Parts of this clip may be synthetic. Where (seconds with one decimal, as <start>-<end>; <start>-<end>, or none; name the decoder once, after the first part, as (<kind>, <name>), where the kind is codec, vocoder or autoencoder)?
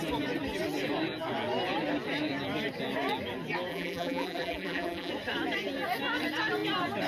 3.7-5.1 (vocoder, BigVGAN v2)